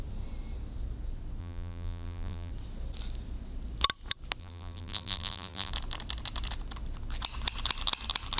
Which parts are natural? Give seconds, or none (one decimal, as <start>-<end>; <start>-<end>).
0.0-1.4; 2.5-4.4; 5.7-8.4